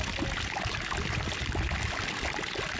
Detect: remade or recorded recorded